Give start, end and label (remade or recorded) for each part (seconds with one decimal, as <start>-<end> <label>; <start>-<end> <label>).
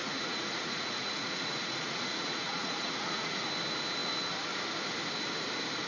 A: 0.0-3.5 remade; 3.5-5.9 recorded